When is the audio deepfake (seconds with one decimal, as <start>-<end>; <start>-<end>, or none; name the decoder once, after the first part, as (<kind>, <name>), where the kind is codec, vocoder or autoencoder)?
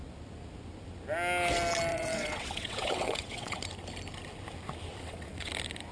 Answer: 1.9-3.6 (vocoder, WaveNeXt); 4.9-5.5